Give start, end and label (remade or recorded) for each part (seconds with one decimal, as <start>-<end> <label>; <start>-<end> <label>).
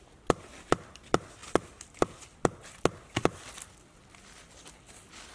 0.0-5.3 recorded